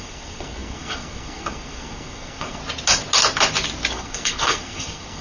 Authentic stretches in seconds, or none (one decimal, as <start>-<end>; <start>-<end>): 2.6-3.9